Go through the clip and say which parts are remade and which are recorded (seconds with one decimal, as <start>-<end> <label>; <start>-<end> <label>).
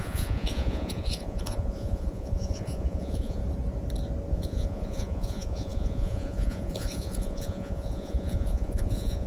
0.0-3.4 remade; 3.4-4.3 recorded; 4.3-9.3 remade